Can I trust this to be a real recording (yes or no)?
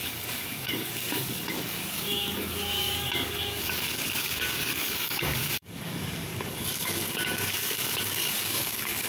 no